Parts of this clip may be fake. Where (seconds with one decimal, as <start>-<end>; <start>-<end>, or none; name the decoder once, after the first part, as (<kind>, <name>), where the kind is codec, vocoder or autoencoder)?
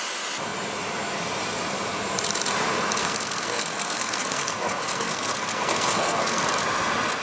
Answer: 3.0-6.5 (codec, SNAC)